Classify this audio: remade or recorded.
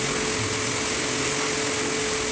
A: recorded